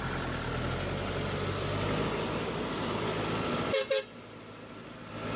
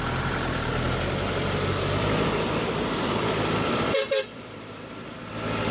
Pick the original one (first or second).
first